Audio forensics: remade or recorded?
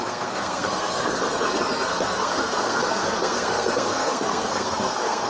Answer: remade